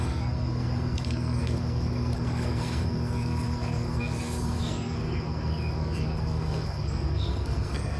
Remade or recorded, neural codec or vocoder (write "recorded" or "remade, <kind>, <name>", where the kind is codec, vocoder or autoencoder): remade, codec, SNAC